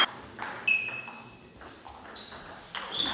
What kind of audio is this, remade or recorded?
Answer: recorded